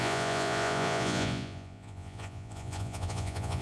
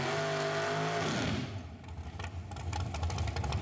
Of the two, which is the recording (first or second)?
second